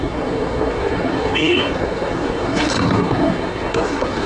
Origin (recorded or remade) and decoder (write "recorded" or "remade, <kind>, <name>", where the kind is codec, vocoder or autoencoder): remade, codec, SNAC